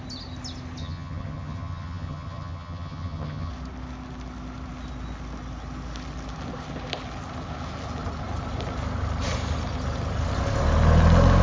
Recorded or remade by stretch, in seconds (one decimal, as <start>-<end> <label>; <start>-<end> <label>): 0.0-0.8 recorded; 0.8-3.5 remade; 3.5-11.4 recorded